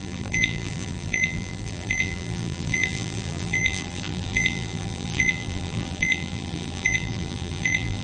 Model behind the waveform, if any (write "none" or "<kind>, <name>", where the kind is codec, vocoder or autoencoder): vocoder, BigVGAN v2